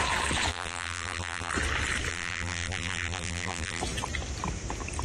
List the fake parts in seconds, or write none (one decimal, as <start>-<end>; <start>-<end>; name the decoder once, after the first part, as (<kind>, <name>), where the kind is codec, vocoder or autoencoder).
0.5-1.5 (vocoder, BigVGAN v2); 2.1-3.8